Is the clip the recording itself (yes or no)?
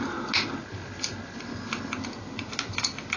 yes